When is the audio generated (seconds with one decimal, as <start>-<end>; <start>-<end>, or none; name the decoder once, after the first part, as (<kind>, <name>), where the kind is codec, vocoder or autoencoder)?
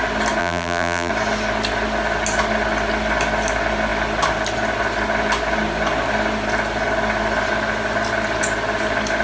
0.4-1.1 (vocoder, BigVGAN v2)